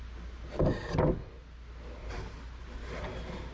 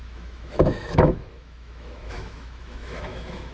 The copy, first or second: second